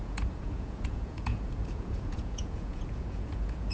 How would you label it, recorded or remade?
remade